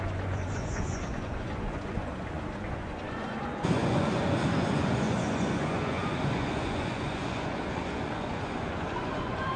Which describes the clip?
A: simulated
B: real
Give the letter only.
A